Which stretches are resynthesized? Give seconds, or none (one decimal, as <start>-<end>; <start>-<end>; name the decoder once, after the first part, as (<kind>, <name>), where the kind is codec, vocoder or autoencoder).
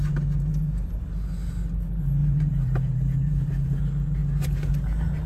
2.2-3.8 (vocoder, BigVGAN v2)